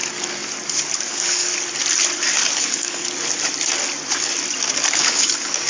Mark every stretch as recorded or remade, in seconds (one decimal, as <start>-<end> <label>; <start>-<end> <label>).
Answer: 0.0-1.1 recorded; 1.1-1.5 remade; 1.5-2.3 recorded; 2.3-3.0 remade; 3.0-4.9 recorded; 4.9-5.7 remade

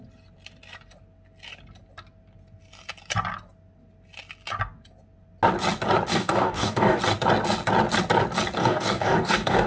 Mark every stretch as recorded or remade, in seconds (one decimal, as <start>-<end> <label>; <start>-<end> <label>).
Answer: 0.0-6.1 recorded; 6.1-7.0 remade; 7.0-8.6 recorded; 8.6-9.7 remade

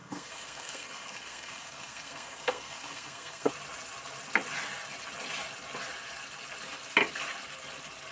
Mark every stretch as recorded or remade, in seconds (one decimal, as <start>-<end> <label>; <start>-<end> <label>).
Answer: 0.0-3.5 remade; 3.5-8.1 recorded